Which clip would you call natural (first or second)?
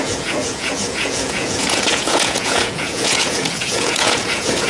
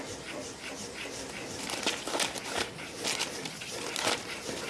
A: second